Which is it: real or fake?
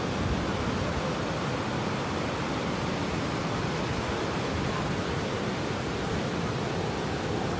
real